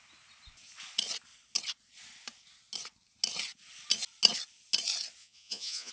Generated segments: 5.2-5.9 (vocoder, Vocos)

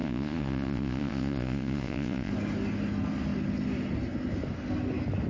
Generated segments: 0.0-2.3 (vocoder, Vocos)

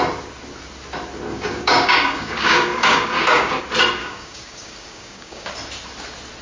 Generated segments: 1.3-3.6 (codec, DAC); 4.0-5.5

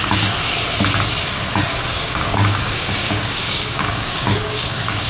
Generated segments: 1.7-5.1 (codec, DAC)

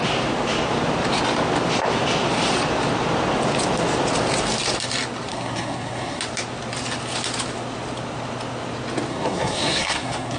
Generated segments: 5.3-6.2 (codec, SNAC); 9.1-10.4

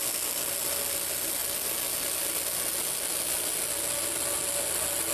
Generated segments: none

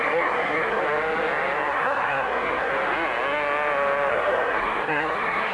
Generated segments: 0.0-0.8 (codec, SNAC); 1.7-2.7; 4.1-5.5